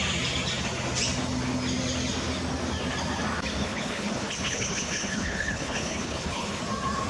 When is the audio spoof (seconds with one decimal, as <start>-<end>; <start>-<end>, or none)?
3.6-6.6